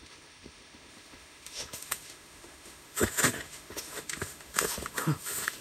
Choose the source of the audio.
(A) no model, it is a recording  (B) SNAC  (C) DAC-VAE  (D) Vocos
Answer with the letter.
C